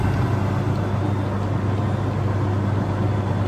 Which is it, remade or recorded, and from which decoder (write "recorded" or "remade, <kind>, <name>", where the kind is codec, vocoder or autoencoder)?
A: recorded